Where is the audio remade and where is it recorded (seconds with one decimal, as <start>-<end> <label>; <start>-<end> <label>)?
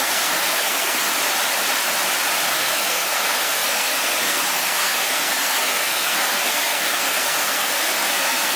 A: 0.0-1.1 remade; 1.1-2.5 recorded; 2.5-8.6 remade